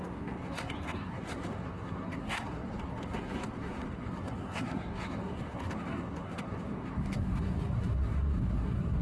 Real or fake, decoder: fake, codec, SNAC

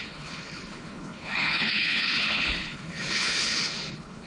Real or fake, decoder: fake, codec, HILCodec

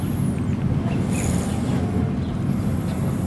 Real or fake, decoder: real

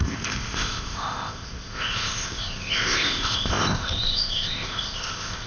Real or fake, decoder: fake, codec, ZipCodec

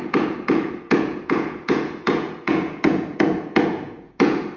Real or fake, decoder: fake, vocoder, Vocos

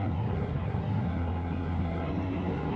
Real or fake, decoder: fake, codec, SNAC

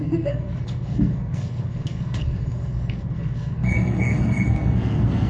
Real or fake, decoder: fake, codec, SNAC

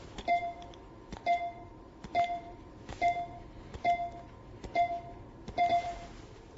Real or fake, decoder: fake, vocoder, BigVGAN v2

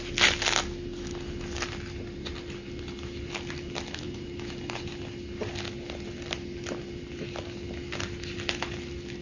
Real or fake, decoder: real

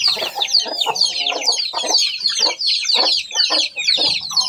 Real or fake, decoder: real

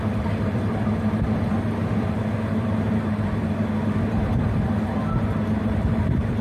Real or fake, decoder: fake, vocoder, BigVGAN v2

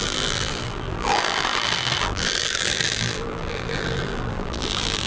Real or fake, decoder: fake, vocoder, BigVGAN v2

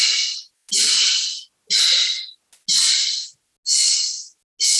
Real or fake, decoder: real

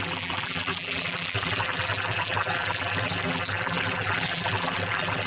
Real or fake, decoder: fake, vocoder, BigVGAN v2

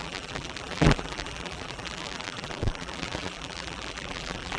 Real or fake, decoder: fake, vocoder, BigVGAN v2